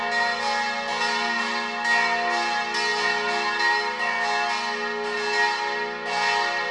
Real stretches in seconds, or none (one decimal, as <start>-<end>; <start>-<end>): 0.0-6.7